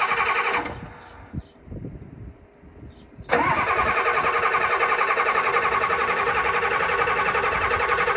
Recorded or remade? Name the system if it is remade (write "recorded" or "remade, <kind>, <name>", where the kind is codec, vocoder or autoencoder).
recorded